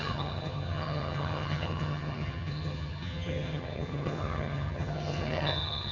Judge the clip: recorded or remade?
remade